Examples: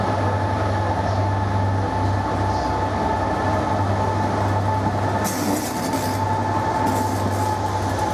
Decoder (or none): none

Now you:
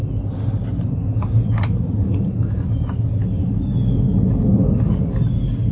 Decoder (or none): none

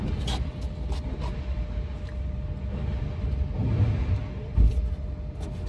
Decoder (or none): none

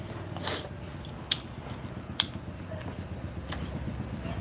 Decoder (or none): none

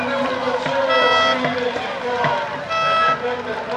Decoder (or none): none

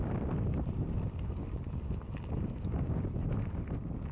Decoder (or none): vocoder, BigVGAN v2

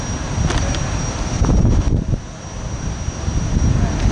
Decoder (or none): none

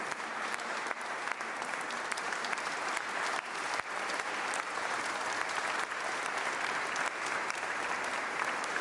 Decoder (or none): vocoder, BigVGAN v2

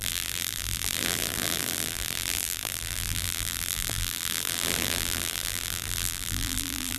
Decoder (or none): vocoder, BigVGAN v2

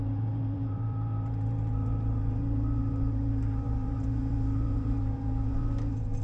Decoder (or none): vocoder, BigVGAN v2